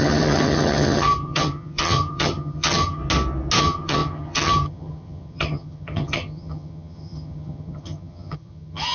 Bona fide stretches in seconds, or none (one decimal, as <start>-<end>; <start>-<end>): 3.0-3.6

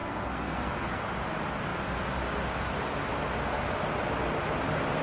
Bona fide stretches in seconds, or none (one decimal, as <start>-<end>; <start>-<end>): 1.0-5.0

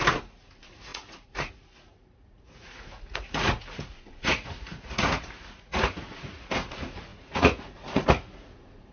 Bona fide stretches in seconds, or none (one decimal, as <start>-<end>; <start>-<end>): none